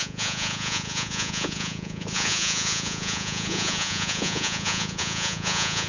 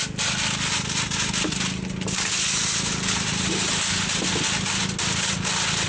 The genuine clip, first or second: second